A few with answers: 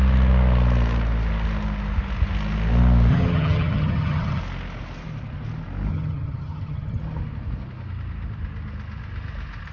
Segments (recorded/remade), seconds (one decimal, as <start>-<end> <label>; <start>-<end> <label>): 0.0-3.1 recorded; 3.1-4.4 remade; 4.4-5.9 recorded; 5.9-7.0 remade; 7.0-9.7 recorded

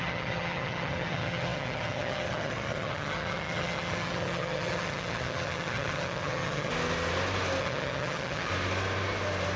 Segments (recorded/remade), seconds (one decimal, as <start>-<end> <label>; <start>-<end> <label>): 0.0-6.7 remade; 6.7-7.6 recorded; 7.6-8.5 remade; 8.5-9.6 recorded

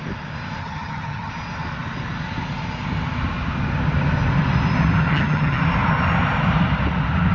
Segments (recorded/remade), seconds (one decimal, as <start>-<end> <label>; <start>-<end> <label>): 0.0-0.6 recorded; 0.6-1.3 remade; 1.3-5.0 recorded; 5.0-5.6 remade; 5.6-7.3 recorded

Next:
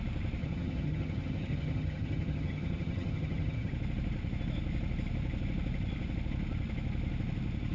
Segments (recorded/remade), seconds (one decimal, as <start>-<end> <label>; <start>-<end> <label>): 0.0-0.4 recorded; 0.4-3.7 remade; 3.7-7.7 recorded

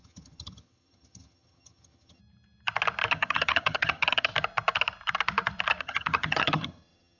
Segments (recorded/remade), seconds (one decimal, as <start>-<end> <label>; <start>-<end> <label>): 0.0-2.2 remade; 2.2-3.1 recorded; 3.1-4.3 remade; 4.3-5.8 recorded; 5.8-7.2 remade

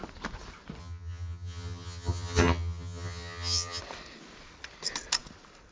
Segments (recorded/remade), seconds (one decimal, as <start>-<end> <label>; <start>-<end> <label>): 0.0-0.8 recorded; 0.8-3.8 remade; 3.8-5.7 recorded